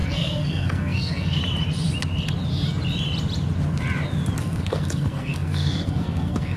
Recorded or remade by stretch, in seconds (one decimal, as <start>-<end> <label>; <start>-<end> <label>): 0.0-1.4 remade; 1.4-4.4 recorded; 4.4-6.6 remade